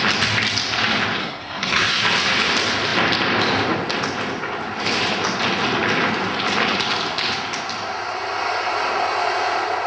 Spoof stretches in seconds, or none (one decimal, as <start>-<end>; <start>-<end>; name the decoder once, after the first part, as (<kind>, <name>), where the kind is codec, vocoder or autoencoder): 1.2-2.0 (codec, SNAC)